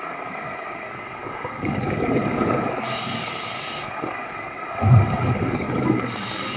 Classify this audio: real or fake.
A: fake